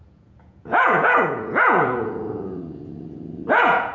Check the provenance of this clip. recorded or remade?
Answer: remade